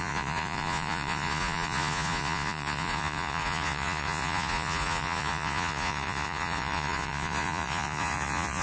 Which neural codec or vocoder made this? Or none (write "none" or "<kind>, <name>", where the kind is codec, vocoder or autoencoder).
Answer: vocoder, Vocos